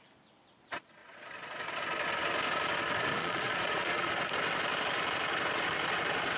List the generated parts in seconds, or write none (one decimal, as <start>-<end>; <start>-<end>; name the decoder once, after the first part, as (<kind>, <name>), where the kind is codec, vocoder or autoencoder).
1.0-1.8 (vocoder, Vocos); 3.2-4.1